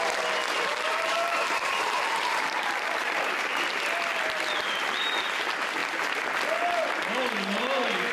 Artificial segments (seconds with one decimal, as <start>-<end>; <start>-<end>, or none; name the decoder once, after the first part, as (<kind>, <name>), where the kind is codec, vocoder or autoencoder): 0.7-3.5 (vocoder, BigVGAN v2)